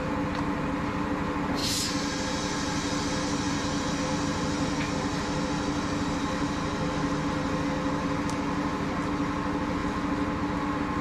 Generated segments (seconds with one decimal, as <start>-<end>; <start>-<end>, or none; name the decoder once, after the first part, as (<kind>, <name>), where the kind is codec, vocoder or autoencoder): none